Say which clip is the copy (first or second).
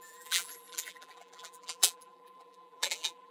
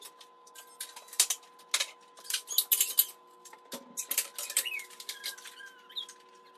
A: first